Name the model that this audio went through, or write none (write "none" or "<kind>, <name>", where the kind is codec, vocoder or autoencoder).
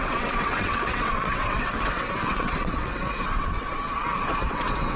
vocoder, WaveNeXt